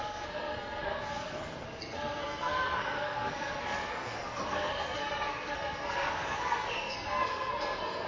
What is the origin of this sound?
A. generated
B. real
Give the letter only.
A